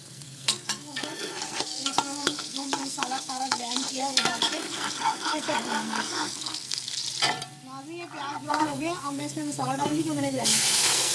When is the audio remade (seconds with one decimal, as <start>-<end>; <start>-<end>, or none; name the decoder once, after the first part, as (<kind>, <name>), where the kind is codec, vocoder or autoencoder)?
0.0-7.0 (codec, SNAC); 8.5-11.1